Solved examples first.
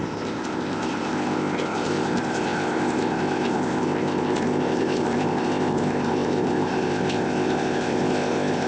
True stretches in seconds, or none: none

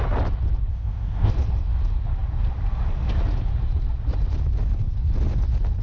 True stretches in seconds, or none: 0.0-0.7; 1.3-5.8

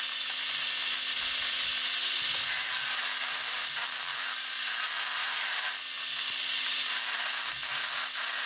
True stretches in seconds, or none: 0.0-8.5

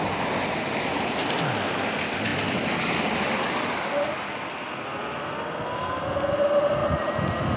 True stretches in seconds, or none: 0.0-7.6

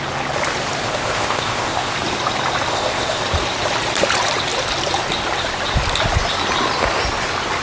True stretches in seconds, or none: 0.0-0.8; 1.9-2.7; 3.2-7.6

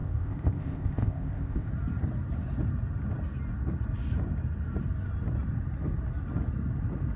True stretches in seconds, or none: 1.7-7.2

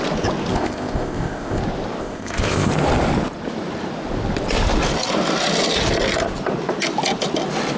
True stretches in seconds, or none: 0.0-0.5; 1.6-2.0; 2.7-7.8